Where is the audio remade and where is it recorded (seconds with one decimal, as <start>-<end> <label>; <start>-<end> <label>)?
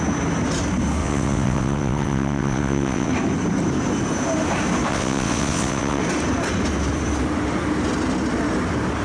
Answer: 0.0-1.0 recorded; 1.0-3.1 remade; 3.1-4.9 recorded; 4.9-6.0 remade; 6.0-9.0 recorded